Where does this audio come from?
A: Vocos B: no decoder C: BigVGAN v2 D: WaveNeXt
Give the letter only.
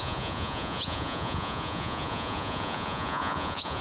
A